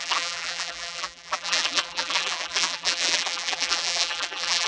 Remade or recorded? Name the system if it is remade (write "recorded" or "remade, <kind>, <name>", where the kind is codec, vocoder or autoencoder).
remade, vocoder, BigVGAN v2